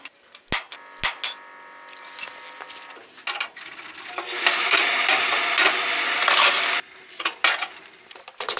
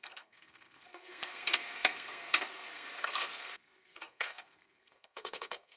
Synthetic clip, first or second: second